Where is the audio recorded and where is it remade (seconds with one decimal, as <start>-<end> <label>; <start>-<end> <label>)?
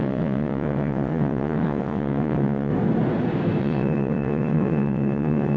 0.0-2.7 remade; 2.7-3.6 recorded; 3.6-5.6 remade